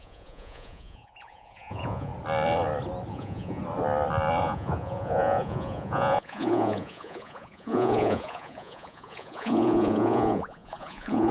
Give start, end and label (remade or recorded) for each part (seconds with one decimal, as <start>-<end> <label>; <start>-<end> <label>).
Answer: 0.0-2.1 remade; 2.1-3.1 recorded; 3.1-3.6 remade; 3.6-4.4 recorded; 4.4-11.3 remade